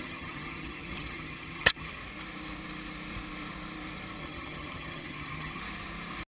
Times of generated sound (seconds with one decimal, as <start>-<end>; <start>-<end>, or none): 0.0-2.0; 4.2-5.6